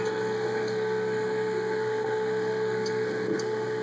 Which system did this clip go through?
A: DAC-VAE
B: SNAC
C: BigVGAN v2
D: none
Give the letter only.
B